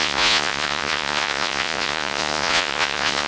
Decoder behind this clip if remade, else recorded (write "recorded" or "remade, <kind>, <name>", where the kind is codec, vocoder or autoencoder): remade, vocoder, Vocos